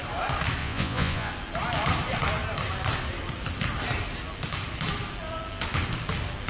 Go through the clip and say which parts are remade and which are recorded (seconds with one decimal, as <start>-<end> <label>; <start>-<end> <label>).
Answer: 0.0-0.6 recorded; 0.6-1.3 remade; 1.3-6.5 recorded